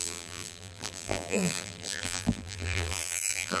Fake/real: fake